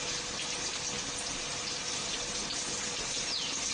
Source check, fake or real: real